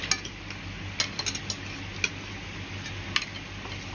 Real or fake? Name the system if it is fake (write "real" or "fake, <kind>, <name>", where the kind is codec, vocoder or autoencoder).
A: real